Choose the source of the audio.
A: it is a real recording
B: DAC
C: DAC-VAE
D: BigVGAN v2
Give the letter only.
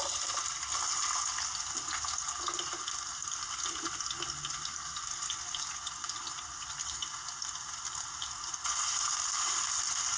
A